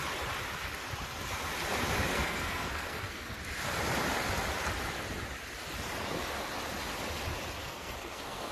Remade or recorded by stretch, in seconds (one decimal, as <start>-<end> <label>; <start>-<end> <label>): 0.0-2.1 recorded; 2.1-3.4 remade; 3.4-7.6 recorded; 7.6-8.5 remade